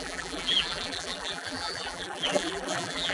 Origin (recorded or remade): remade